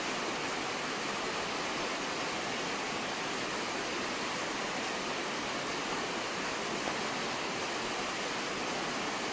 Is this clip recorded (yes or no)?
yes